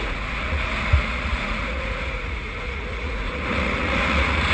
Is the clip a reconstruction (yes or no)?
yes